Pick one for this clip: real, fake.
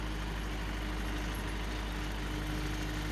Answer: real